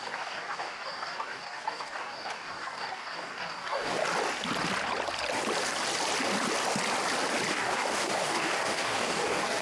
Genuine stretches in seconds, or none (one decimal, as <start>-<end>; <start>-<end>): 4.0-7.5